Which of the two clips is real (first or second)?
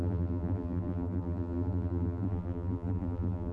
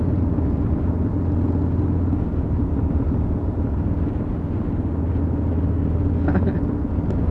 second